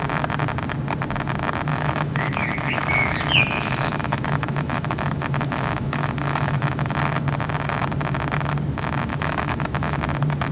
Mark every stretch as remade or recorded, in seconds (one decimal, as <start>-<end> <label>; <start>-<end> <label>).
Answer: 0.0-1.7 recorded; 1.7-6.9 remade; 6.9-9.1 recorded; 9.1-10.0 remade; 10.0-10.5 recorded